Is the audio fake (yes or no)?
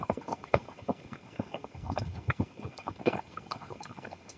yes